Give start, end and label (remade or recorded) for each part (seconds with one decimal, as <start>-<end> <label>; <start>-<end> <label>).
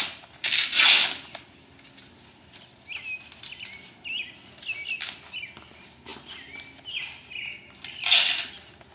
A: 0.0-8.9 recorded